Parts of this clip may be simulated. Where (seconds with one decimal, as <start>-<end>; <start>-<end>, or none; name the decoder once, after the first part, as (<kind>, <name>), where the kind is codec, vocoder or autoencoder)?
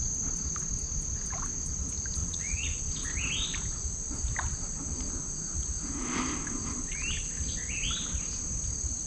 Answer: 2.2-2.8 (vocoder, WaveNeXt)